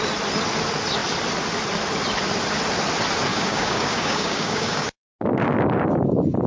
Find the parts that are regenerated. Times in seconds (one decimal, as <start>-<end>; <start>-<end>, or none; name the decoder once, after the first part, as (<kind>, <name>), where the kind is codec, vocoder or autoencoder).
3.3-5.1 (codec, DAC)